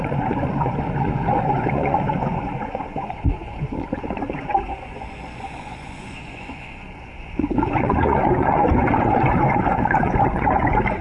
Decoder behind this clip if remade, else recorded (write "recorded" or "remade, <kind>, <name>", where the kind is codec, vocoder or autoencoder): remade, vocoder, Vocos